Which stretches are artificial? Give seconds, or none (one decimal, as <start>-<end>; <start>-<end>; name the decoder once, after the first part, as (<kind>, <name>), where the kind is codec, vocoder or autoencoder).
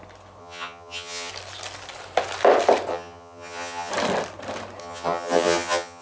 0.4-1.3 (vocoder, HiFi-GAN); 2.9-3.9; 4.8-6.0